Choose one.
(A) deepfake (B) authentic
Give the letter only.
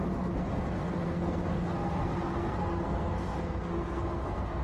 A